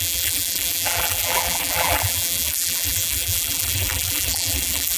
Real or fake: fake